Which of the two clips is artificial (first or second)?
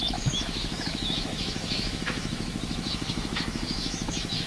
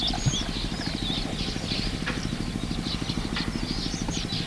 first